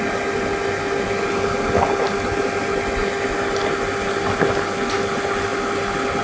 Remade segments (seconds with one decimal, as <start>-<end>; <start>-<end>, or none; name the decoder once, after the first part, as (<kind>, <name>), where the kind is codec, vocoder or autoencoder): none